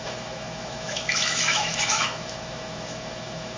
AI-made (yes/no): yes